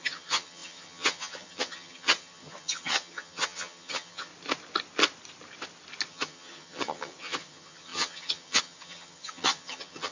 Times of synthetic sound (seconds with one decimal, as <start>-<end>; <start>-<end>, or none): 0.0-4.3; 6.1-10.1